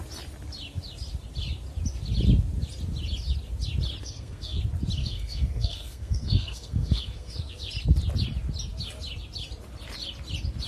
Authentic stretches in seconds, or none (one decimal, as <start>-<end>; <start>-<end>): 0.0-4.0; 4.6-5.0; 7.7-10.7